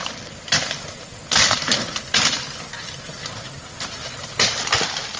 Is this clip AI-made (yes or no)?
no